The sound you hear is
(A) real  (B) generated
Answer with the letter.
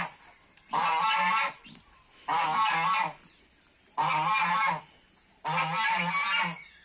A